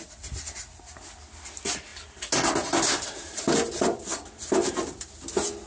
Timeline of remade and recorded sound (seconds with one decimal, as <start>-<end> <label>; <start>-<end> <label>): 0.0-5.7 recorded